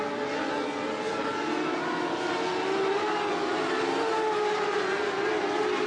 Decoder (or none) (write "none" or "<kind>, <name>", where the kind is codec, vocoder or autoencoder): none